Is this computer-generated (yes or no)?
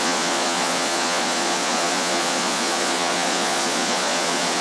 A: yes